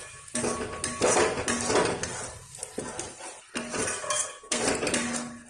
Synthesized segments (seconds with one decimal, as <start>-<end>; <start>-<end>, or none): 3.8-4.6